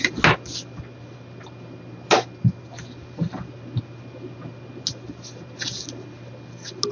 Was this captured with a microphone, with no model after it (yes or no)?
yes